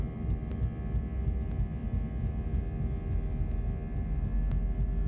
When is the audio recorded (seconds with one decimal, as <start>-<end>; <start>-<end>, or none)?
0.0-5.1